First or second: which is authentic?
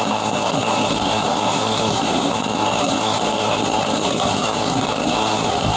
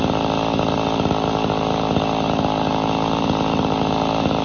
second